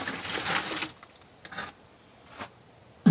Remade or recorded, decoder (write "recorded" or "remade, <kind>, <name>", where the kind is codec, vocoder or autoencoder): recorded